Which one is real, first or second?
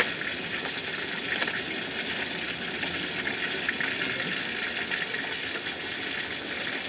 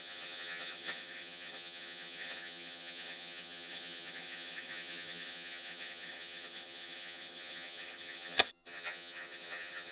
first